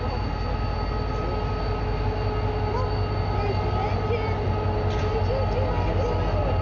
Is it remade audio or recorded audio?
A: recorded